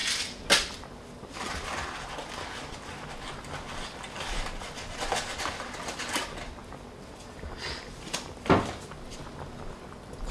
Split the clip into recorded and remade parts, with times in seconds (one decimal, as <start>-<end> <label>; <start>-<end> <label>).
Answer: 0.0-10.3 recorded